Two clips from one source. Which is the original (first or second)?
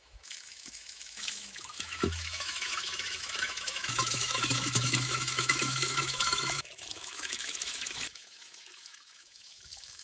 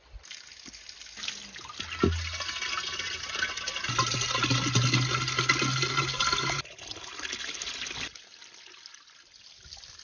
second